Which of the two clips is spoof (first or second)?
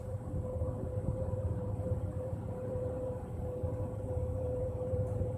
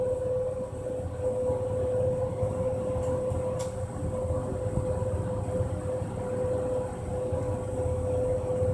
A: first